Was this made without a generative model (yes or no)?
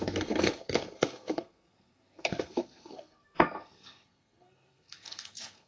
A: no